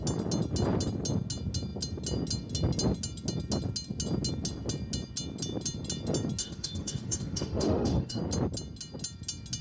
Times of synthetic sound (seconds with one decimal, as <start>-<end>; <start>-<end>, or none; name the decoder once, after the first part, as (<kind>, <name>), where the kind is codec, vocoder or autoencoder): 6.4-8.2 (autoencoder, DAC-VAE)